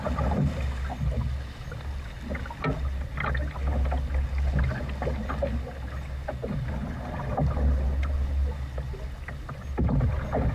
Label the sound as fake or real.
real